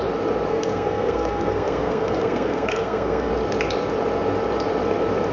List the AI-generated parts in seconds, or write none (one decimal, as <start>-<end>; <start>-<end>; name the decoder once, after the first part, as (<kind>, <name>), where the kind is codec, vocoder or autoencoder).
0.5-3.3 (codec, SNAC)